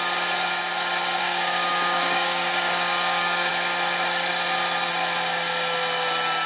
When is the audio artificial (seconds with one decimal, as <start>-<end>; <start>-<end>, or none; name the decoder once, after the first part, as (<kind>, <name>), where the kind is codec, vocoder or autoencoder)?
1.2-3.5 (codec, DAC)